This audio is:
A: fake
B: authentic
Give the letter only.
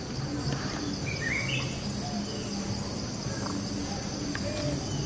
B